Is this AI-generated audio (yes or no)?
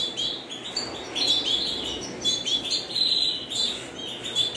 no